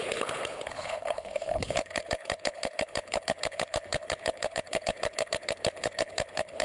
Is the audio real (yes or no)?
no